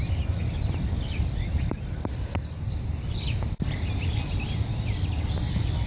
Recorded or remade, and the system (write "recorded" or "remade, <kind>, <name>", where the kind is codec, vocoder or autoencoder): recorded